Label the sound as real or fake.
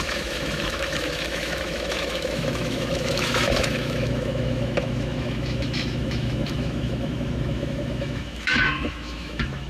fake